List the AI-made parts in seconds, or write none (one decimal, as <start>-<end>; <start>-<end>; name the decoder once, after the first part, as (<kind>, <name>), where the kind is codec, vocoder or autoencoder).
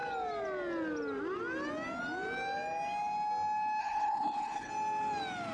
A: 3.8-4.7 (codec, HILCodec)